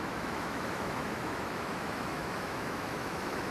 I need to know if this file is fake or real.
fake